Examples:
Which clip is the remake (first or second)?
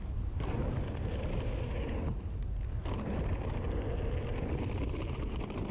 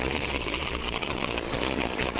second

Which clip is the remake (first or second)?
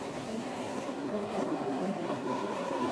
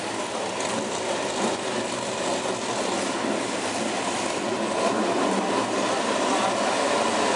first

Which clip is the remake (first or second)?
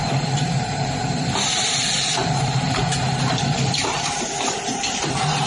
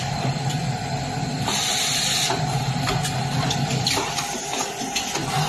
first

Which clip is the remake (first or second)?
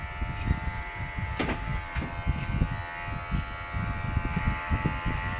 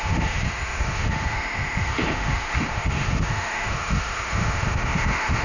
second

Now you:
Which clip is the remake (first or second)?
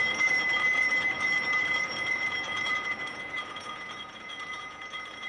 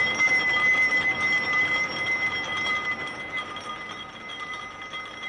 first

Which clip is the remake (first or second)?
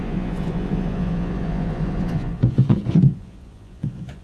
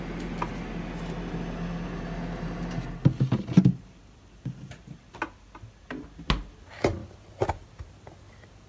first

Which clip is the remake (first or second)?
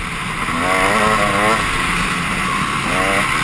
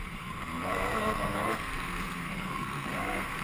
second